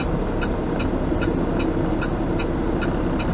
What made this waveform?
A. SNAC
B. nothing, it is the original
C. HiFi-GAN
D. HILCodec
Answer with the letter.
B